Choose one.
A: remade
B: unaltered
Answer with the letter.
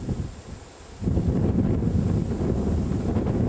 B